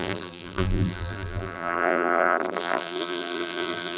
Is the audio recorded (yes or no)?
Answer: no